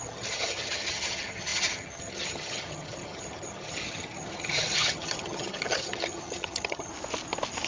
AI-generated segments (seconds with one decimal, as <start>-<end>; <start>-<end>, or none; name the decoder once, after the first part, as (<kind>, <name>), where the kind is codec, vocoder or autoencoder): 0.0-6.9 (vocoder, HiFi-GAN)